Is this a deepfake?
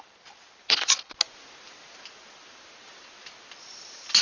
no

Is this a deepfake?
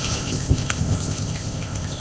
yes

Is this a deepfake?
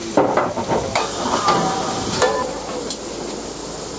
no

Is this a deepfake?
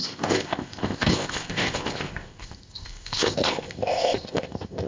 yes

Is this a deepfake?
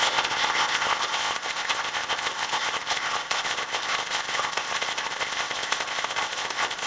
yes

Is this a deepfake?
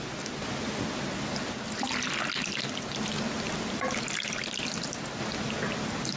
no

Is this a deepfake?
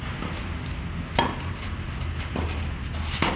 no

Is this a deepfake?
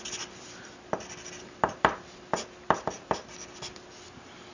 no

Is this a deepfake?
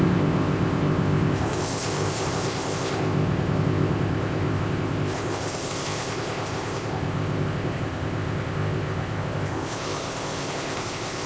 yes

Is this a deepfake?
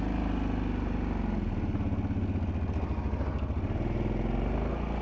no